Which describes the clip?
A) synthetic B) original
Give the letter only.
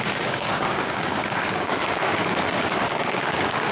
A